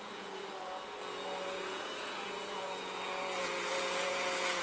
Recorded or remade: remade